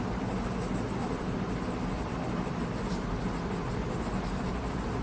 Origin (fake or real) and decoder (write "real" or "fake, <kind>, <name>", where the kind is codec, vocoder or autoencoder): real